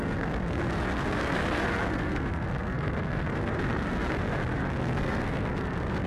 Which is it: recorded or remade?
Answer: remade